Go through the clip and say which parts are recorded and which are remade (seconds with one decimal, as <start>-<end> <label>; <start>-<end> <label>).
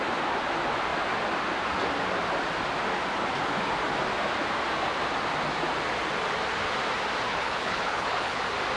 0.0-7.3 recorded; 7.3-8.4 remade; 8.4-8.8 recorded